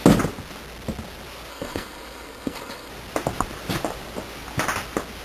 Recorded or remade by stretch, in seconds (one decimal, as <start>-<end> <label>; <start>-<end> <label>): 0.0-1.5 recorded; 1.5-2.9 remade; 2.9-5.2 recorded